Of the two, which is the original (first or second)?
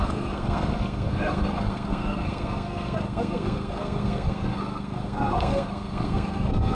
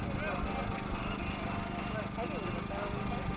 second